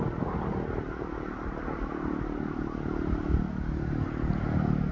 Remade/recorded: recorded